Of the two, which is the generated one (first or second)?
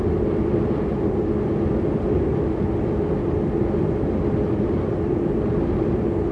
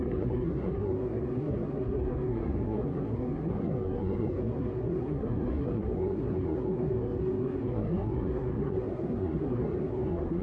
second